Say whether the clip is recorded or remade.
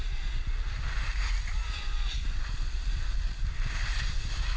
recorded